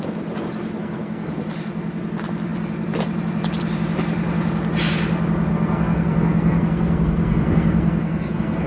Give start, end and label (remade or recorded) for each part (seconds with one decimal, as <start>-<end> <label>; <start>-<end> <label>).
0.0-0.8 recorded; 0.8-1.3 remade; 1.3-5.5 recorded; 5.5-8.7 remade

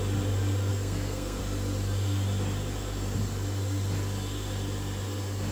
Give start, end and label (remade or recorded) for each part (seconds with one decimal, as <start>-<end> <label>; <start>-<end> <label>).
0.0-0.7 recorded; 0.7-1.4 remade; 1.4-5.5 recorded